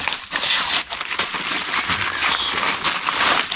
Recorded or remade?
recorded